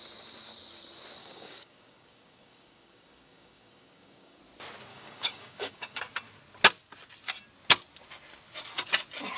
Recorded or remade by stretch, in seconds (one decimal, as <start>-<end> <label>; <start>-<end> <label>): 0.0-1.2 recorded; 1.2-4.4 remade; 4.4-4.9 recorded; 4.9-6.0 remade; 6.0-9.4 recorded